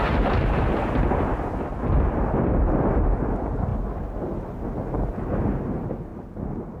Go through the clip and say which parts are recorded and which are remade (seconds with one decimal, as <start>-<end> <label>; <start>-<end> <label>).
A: 0.0-6.8 recorded